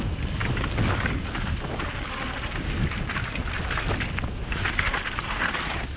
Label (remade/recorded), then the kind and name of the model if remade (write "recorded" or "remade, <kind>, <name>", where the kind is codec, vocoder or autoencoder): recorded